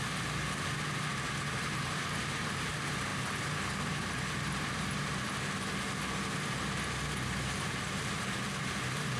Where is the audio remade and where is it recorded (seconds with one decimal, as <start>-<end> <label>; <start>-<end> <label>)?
0.0-1.1 recorded; 1.1-2.7 remade; 2.7-9.2 recorded